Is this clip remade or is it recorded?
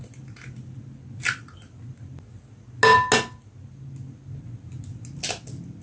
recorded